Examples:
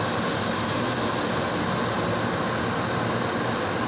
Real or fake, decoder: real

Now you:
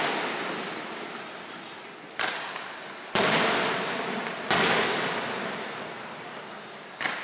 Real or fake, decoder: real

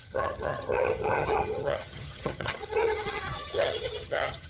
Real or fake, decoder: fake, vocoder, HiFi-GAN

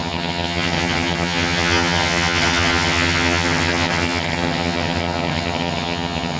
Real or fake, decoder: fake, vocoder, HiFi-GAN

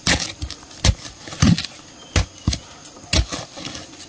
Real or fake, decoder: real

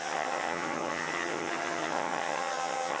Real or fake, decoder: fake, vocoder, HiFi-GAN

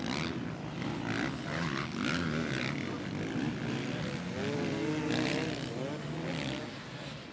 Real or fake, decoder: real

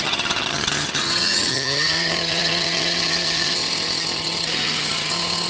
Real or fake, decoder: fake, vocoder, HiFi-GAN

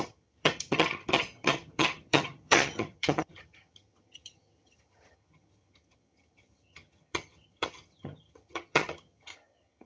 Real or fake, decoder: fake, vocoder, HiFi-GAN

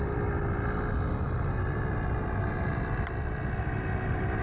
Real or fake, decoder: real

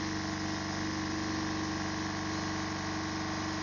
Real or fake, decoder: real